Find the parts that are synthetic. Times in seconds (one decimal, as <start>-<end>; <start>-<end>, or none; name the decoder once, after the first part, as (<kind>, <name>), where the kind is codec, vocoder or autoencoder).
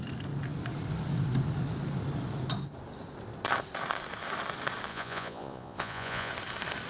4.9-6.3 (vocoder, Vocos)